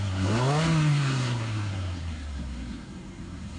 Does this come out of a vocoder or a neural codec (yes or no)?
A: yes